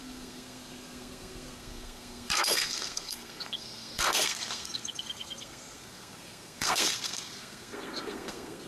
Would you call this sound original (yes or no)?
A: no